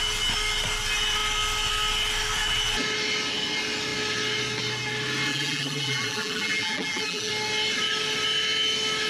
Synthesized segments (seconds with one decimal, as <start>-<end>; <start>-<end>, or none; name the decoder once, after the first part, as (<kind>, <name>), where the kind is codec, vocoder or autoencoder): 5.3-7.3 (vocoder, BigVGAN v2)